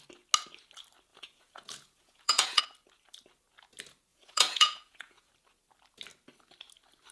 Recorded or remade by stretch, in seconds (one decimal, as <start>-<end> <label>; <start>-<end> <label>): 0.0-1.1 recorded; 1.1-2.6 remade; 2.6-4.1 recorded; 4.1-5.3 remade; 5.3-7.1 recorded